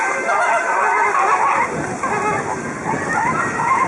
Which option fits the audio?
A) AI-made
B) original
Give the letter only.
B